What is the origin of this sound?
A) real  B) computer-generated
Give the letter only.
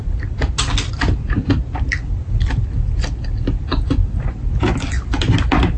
A